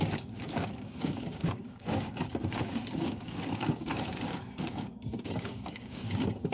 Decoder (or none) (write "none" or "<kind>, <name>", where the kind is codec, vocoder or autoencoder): codec, DAC